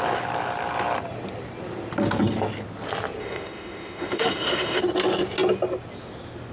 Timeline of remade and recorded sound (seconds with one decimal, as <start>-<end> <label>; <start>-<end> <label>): 0.0-3.2 recorded; 3.2-4.8 remade; 4.8-6.5 recorded